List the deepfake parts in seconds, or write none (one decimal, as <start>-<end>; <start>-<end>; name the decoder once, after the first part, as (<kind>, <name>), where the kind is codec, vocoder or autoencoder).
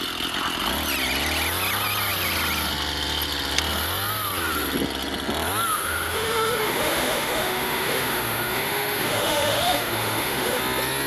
5.7-10.6 (autoencoder, DAC-VAE)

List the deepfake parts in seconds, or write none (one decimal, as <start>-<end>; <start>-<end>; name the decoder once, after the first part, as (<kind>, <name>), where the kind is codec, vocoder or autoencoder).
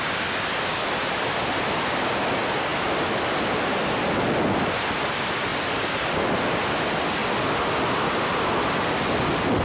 none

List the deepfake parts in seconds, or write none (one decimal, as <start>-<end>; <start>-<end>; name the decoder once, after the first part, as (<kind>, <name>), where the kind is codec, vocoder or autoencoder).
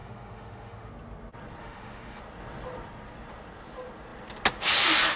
0.0-0.9 (autoencoder, DAC-VAE); 1.6-2.2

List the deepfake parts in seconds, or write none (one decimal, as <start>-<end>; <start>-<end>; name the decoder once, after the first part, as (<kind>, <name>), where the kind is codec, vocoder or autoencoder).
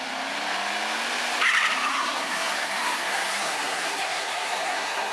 1.9-5.1 (codec, SNAC)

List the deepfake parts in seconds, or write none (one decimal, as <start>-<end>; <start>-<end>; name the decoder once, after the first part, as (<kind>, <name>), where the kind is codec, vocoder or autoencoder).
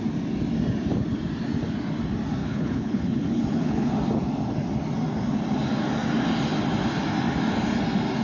2.4-3.9 (codec, HILCodec)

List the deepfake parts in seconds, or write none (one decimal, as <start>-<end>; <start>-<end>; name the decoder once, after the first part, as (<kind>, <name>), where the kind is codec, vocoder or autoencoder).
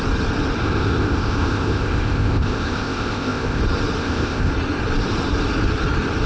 0.6-3.6 (codec, ZipCodec); 4.0-4.5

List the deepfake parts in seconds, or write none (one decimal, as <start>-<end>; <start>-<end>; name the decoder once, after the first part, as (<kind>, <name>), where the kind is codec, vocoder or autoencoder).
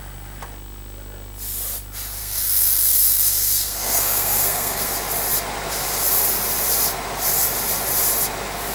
2.2-4.9 (codec, SNAC)